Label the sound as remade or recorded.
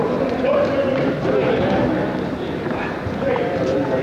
remade